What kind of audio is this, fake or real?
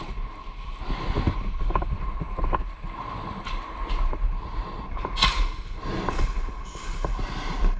real